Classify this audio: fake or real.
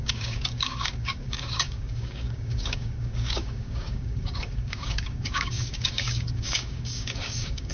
fake